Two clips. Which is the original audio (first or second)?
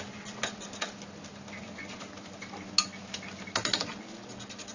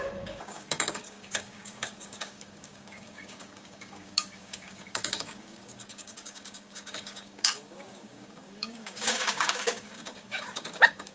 first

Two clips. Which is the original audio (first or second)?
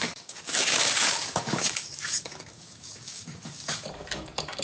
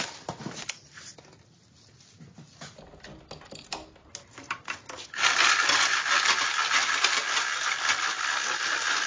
second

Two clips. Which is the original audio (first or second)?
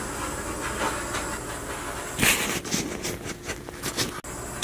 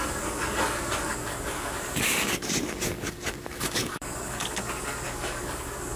first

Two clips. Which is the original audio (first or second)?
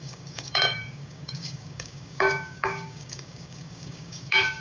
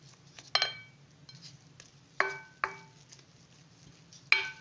second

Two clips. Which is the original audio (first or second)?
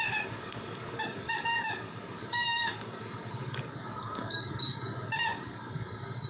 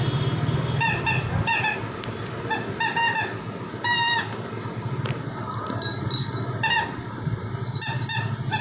second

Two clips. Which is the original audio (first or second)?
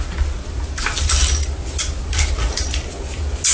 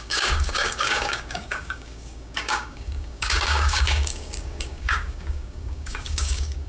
first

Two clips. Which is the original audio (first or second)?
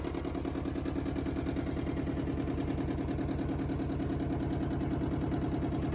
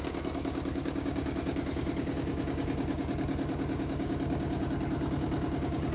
first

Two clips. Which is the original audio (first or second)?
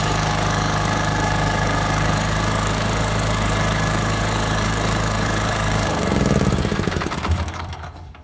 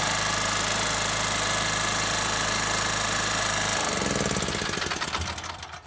second